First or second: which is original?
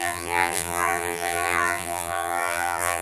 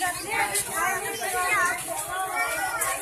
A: second